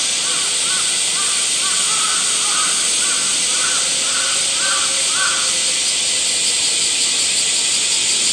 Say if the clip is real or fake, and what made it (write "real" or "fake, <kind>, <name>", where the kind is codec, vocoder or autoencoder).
real